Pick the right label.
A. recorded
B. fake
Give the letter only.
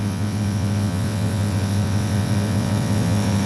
B